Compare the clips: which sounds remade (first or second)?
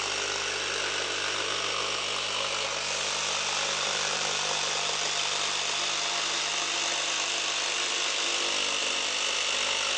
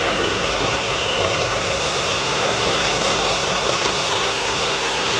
second